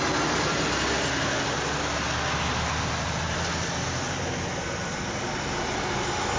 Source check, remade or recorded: recorded